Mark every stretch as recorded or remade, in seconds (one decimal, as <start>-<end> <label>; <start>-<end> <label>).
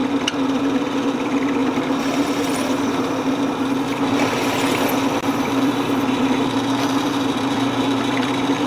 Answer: 0.0-1.6 recorded; 1.6-3.2 remade; 3.2-5.2 recorded; 5.2-8.7 remade